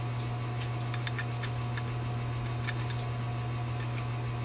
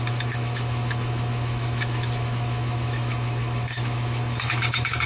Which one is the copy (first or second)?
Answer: second